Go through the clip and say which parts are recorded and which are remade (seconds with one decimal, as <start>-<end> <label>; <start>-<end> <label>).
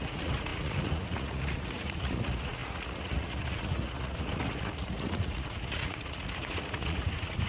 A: 0.0-7.5 remade